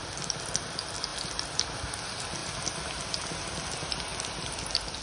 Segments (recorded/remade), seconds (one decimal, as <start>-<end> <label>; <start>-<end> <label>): 0.0-1.1 recorded; 1.1-2.0 remade; 2.0-4.1 recorded; 4.1-5.0 remade